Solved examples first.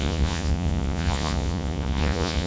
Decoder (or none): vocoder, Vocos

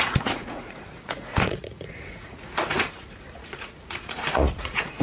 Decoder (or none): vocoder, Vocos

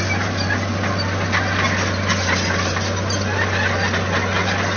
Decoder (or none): none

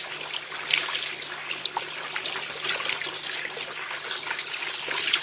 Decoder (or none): none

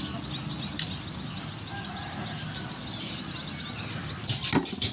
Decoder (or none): none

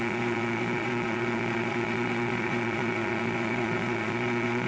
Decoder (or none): vocoder, Vocos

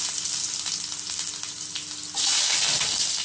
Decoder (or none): none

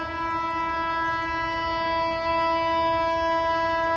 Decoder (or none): none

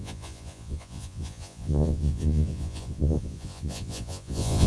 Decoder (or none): vocoder, Vocos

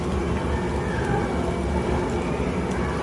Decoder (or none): none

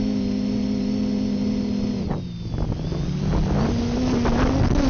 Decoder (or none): none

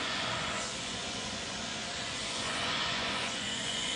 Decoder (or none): vocoder, Vocos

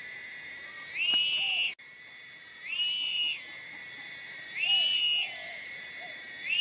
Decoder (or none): none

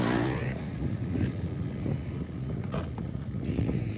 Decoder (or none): vocoder, Vocos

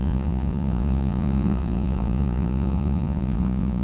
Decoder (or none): vocoder, Vocos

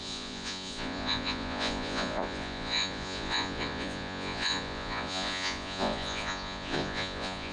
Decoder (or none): vocoder, Vocos